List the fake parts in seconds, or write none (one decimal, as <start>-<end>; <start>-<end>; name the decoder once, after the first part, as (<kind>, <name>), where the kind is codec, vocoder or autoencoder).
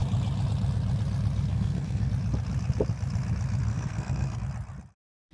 1.5-2.1 (codec, SNAC); 3.7-4.4